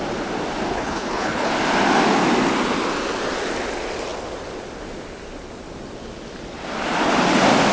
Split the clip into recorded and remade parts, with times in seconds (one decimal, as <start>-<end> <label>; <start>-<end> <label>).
0.0-0.7 recorded; 0.7-1.5 remade; 1.5-7.7 recorded